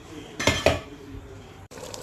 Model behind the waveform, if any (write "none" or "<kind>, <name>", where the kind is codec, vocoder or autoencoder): vocoder, BigVGAN v2